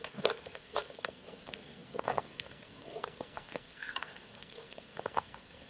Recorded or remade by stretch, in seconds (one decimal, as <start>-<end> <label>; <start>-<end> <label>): 0.0-5.7 remade